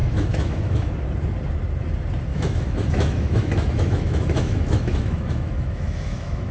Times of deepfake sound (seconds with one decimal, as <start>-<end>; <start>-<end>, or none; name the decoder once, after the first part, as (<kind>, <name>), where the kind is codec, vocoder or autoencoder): 0.0-0.9 (autoencoder, DAC-VAE); 2.3-6.5